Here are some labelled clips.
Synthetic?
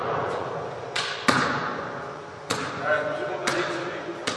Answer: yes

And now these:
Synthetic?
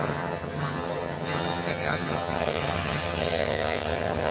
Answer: yes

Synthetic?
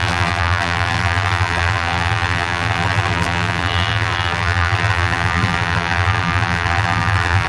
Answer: yes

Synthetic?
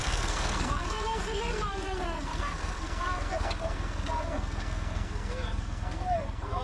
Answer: yes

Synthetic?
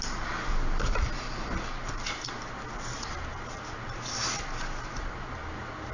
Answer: no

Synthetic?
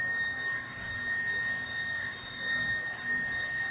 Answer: yes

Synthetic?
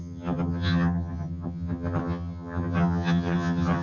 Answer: yes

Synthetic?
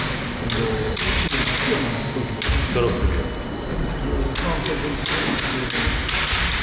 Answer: no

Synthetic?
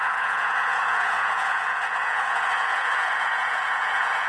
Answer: yes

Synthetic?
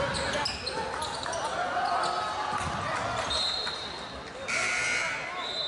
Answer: no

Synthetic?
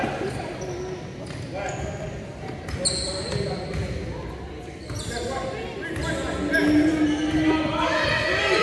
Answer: no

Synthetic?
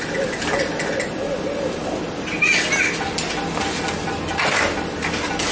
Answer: no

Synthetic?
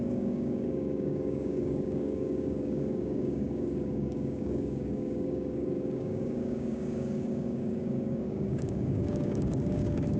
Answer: yes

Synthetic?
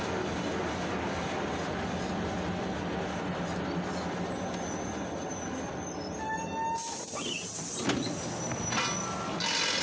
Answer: no